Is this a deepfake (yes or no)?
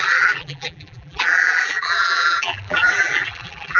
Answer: yes